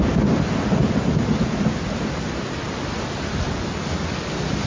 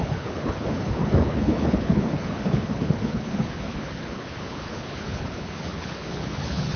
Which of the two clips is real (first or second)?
first